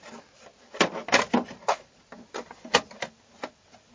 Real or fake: real